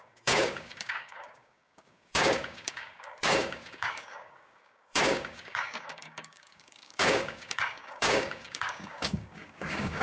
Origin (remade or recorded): remade